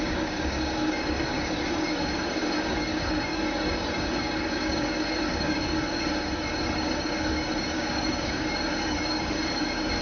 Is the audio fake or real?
fake